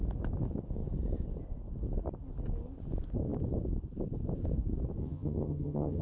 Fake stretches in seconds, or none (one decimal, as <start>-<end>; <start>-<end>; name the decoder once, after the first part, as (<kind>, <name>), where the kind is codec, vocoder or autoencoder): 5.0-6.0 (vocoder, HiFi-GAN)